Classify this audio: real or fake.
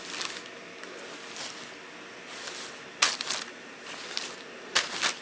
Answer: real